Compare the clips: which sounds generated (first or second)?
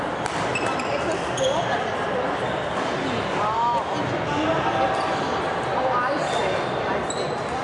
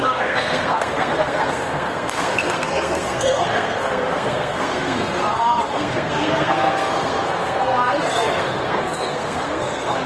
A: second